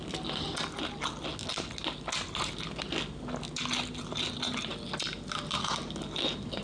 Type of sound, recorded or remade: recorded